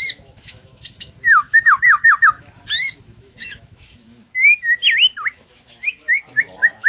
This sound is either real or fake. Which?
fake